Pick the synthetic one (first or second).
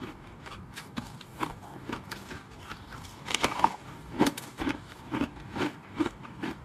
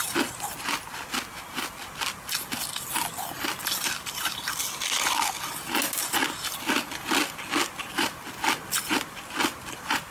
first